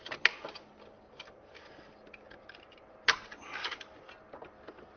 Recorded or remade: recorded